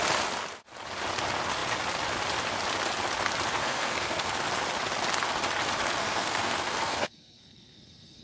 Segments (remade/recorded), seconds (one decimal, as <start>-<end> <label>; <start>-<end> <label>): 0.0-3.6 recorded; 3.6-4.3 remade; 4.3-6.0 recorded; 6.0-8.2 remade